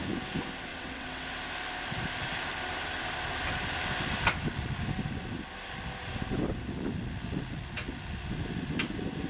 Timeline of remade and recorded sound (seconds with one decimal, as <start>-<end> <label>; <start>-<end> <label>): 0.0-0.7 recorded; 0.7-1.3 remade; 1.3-9.3 recorded